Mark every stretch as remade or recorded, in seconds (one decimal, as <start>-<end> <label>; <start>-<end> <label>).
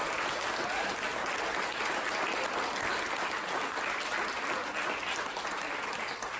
0.0-6.4 recorded